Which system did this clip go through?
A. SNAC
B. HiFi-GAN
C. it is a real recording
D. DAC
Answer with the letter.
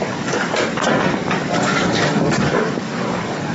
D